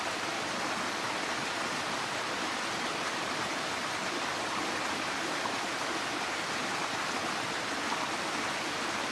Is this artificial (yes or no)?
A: no